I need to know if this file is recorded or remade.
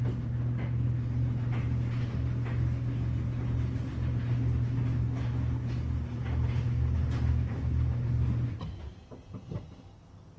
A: recorded